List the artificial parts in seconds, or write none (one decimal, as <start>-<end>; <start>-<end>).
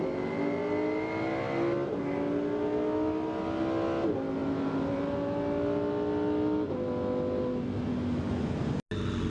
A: 4.4-5.4